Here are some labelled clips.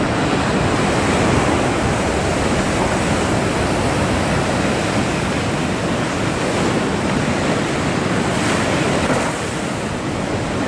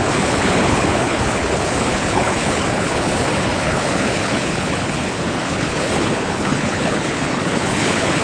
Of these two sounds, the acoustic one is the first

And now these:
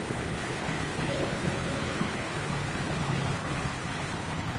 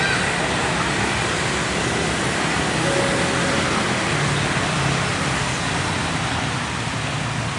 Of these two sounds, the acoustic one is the second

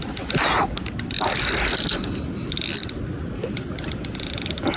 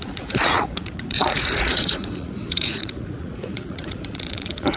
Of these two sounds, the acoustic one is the first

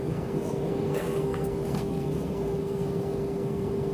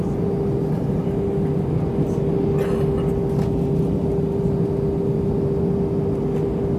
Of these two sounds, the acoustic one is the second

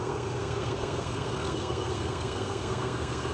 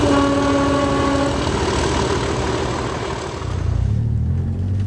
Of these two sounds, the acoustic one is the second